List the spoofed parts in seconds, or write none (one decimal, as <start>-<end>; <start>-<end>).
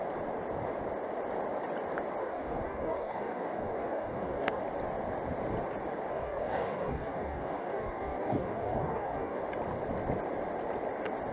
2.2-4.6; 6.1-9.4